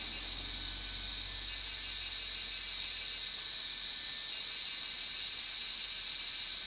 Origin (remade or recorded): recorded